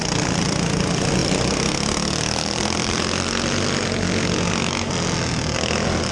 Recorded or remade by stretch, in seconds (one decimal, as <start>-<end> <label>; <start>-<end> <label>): 0.0-6.1 recorded

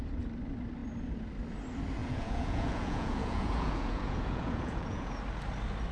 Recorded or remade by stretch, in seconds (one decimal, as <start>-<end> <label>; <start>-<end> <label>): 0.0-2.0 recorded; 2.0-5.2 remade; 5.2-5.9 recorded

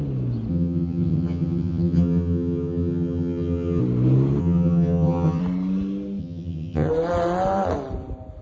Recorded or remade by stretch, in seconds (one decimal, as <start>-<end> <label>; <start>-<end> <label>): 0.0-0.5 recorded; 0.5-3.8 remade; 3.8-4.4 recorded; 4.4-5.4 remade; 5.4-6.2 recorded; 6.2-6.9 remade; 6.9-8.4 recorded